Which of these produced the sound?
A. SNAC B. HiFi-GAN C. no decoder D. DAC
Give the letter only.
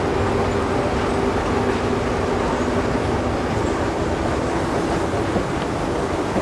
C